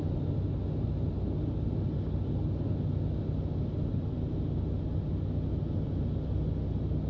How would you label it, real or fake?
real